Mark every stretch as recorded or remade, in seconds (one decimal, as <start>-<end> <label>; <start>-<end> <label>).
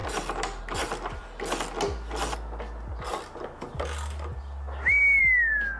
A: 0.0-5.8 recorded